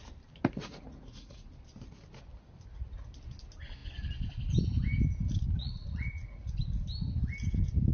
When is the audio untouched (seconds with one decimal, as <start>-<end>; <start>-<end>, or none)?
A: 0.0-0.5; 1.5-5.6; 6.5-7.9